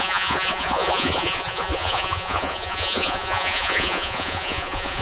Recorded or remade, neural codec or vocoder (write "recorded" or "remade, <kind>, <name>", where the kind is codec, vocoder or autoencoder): remade, vocoder, Vocos